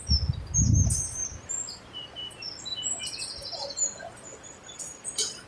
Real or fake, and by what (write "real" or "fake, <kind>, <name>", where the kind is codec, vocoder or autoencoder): real